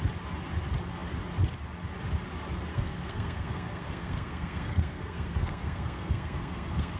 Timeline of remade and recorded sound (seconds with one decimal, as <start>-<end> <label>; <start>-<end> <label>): 0.0-2.7 recorded; 2.7-7.0 remade